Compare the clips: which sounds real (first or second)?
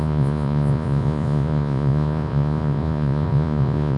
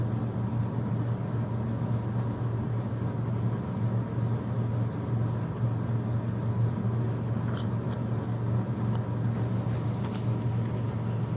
second